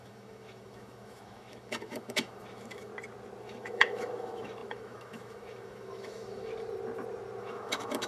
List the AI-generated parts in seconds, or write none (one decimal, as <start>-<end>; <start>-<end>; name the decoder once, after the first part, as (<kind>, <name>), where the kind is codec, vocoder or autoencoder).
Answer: 0.0-2.9 (autoencoder, DAC-VAE); 3.4-6.5; 7.4-8.1